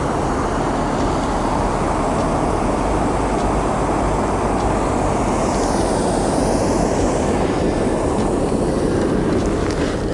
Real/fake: real